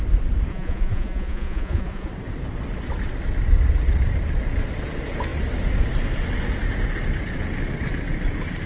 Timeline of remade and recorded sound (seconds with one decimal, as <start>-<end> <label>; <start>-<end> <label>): 0.0-0.5 recorded; 0.5-2.1 remade; 2.1-8.7 recorded